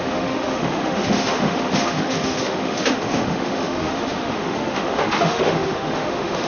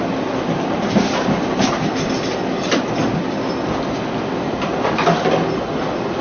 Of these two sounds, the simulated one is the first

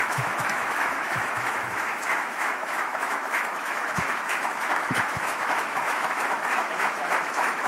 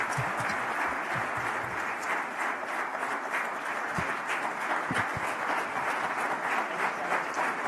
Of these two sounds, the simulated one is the first